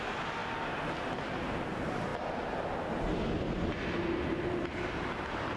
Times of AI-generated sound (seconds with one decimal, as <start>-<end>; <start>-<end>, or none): none